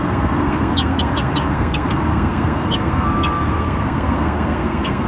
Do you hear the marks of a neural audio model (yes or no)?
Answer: yes